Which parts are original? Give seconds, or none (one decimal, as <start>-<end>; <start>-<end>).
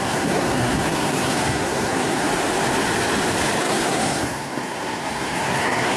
2.3-3.6